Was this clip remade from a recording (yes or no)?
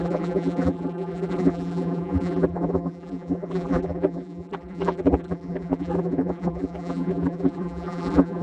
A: yes